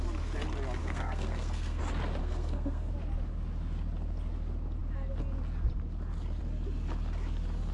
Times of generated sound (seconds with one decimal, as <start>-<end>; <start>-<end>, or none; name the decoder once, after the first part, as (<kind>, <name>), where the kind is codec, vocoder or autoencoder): 0.8-1.8 (codec, SNAC); 2.2-2.9